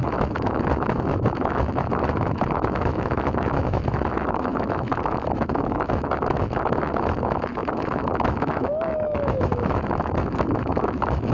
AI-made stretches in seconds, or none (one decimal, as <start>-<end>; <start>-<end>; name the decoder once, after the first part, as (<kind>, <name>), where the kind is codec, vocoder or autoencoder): 0.0-11.3 (autoencoder, DAC-VAE)